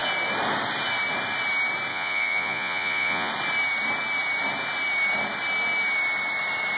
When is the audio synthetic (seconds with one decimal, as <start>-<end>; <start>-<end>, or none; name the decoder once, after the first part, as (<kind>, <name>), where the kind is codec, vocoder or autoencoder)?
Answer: 1.9-3.3 (vocoder, Vocos)